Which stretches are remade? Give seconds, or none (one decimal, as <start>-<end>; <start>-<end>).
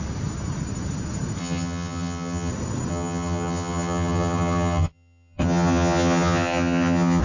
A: 1.4-2.5; 2.9-7.2